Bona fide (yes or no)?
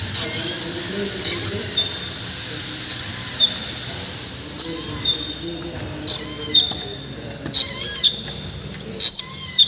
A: yes